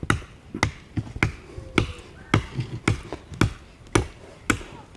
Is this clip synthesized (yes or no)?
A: no